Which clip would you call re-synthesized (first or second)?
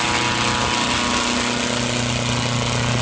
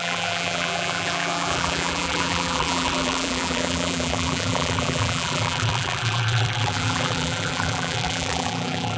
second